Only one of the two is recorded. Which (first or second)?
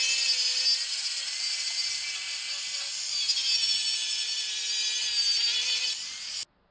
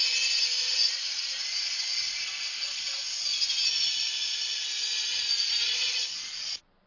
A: first